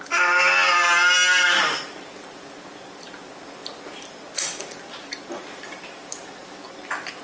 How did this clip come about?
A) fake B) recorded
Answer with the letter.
B